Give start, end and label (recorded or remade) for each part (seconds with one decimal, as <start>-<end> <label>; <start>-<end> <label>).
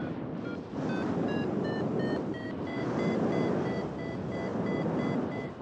0.0-5.6 recorded